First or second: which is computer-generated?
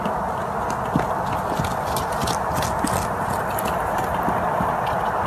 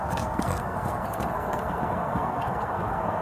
second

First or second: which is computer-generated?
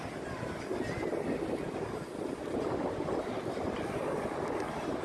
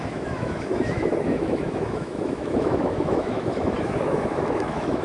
second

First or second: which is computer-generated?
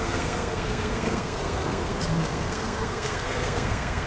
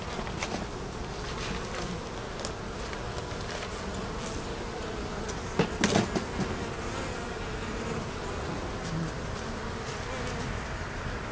first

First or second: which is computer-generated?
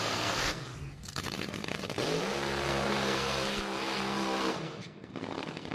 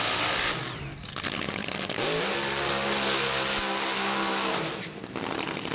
first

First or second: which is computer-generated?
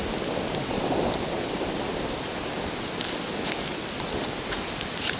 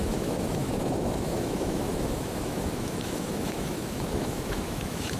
second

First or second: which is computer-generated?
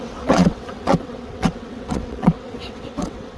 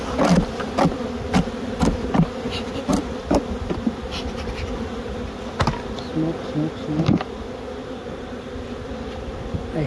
first